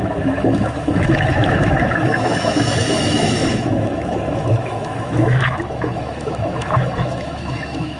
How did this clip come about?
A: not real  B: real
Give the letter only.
A